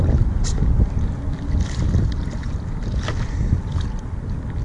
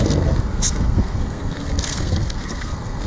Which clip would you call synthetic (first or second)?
second